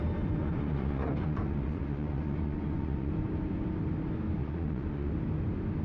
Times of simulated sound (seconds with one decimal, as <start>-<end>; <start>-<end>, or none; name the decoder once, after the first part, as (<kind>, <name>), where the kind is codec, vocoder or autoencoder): 0.4-3.1 (vocoder, Vocos); 4.4-5.1